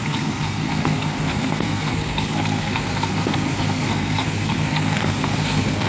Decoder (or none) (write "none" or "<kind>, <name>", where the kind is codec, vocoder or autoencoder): codec, SNAC